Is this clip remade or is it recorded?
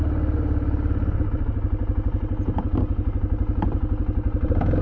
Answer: recorded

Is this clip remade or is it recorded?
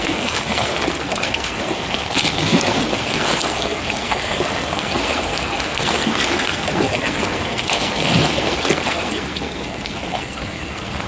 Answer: remade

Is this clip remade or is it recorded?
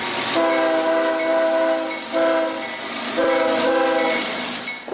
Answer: recorded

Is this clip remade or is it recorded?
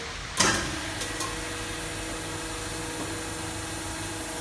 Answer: recorded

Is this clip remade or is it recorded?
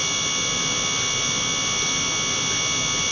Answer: recorded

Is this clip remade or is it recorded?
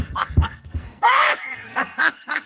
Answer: remade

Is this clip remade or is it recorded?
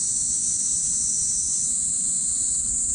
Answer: recorded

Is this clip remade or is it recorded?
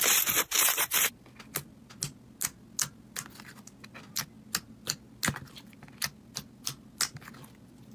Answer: recorded